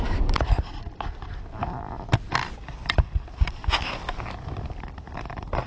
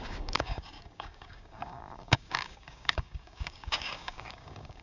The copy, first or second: second